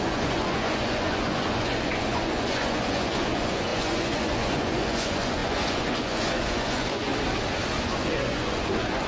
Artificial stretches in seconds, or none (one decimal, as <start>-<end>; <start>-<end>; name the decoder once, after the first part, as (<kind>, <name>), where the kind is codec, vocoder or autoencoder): 0.0-7.1 (vocoder, Vocos); 7.8-9.1